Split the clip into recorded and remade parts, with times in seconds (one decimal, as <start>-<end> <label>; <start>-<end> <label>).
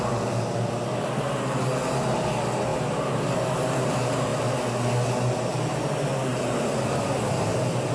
0.0-7.9 recorded